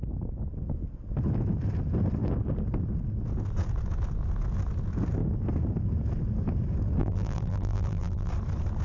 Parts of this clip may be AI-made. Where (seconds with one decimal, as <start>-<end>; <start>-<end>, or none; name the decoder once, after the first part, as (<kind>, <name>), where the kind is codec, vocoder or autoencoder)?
7.0-8.3 (vocoder, BigVGAN v2)